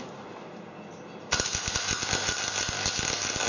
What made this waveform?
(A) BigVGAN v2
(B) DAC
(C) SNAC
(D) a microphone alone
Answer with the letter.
D